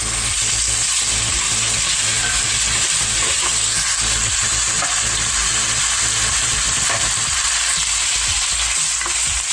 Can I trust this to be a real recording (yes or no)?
yes